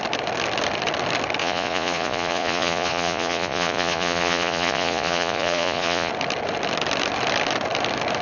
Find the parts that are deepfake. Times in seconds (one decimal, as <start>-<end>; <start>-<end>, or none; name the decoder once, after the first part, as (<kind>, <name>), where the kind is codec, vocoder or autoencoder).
1.4-6.1 (vocoder, Vocos)